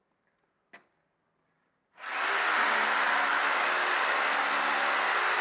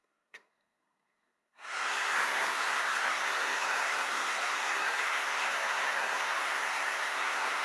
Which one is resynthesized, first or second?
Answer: second